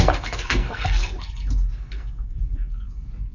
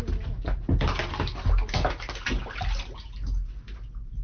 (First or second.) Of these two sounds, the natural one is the second